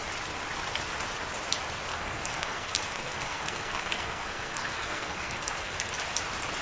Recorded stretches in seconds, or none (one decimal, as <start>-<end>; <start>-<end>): 0.0-1.9; 5.9-6.6